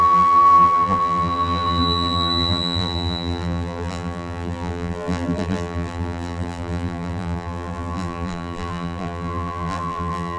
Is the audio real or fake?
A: fake